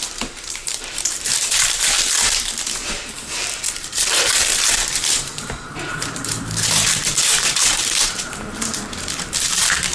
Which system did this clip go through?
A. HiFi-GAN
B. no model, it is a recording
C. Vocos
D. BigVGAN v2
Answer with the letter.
D